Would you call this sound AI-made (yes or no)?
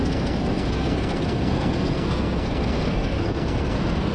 yes